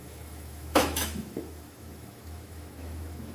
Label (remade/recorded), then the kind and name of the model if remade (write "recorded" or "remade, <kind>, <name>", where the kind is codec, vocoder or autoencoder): remade, autoencoder, DAC-VAE